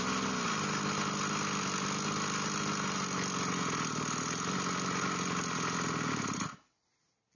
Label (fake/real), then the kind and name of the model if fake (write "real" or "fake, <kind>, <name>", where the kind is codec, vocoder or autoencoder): real